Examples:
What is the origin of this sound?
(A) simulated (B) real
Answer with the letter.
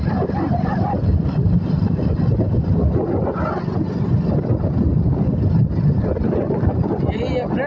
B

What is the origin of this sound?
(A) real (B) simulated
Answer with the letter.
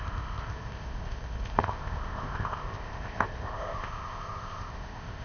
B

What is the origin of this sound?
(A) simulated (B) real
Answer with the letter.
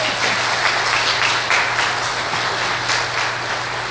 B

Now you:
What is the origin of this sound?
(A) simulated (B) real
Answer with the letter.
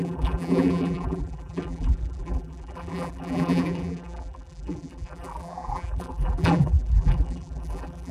A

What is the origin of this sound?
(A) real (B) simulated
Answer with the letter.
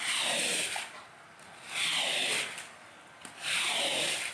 A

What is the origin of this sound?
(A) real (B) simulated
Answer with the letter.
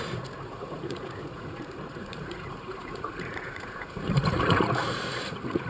B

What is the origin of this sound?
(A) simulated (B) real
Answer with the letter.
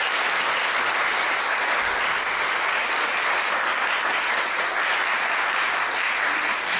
B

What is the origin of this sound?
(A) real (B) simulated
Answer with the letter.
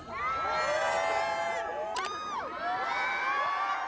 A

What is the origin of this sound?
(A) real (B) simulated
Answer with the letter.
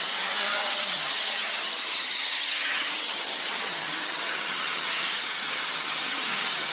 B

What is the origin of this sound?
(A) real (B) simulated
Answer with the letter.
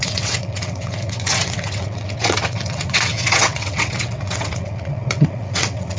B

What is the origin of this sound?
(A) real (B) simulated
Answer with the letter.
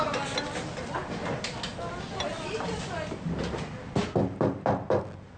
A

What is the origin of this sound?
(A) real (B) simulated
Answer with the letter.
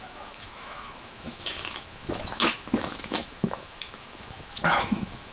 B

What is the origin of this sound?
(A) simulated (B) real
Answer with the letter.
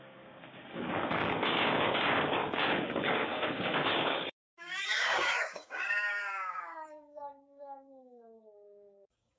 A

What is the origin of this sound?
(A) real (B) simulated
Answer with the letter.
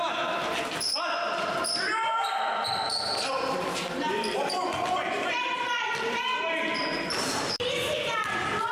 B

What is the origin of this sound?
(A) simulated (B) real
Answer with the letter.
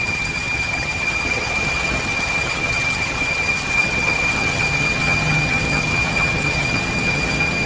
A